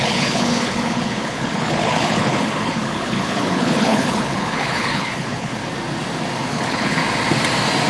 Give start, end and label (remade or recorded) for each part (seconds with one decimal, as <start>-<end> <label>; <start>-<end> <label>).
0.0-5.6 remade; 5.6-6.5 recorded; 6.5-7.0 remade; 7.0-7.9 recorded